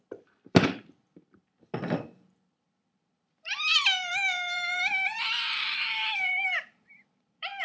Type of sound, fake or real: fake